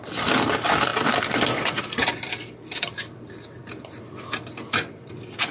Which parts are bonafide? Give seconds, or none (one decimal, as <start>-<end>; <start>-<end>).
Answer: none